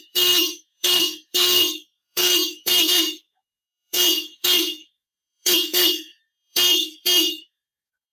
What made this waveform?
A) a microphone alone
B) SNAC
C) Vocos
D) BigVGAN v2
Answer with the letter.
B